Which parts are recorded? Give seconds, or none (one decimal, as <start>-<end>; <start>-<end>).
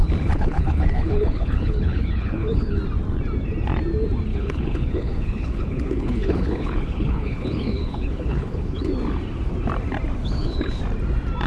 2.8-4.3; 8.9-10.2; 10.8-11.5